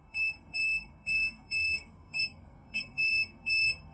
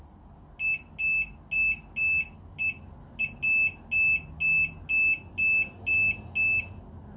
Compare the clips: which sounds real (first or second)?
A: second